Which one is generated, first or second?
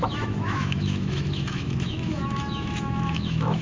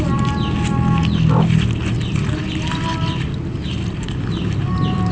first